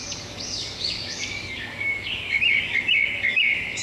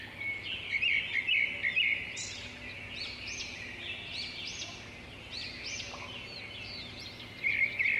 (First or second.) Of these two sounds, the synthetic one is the first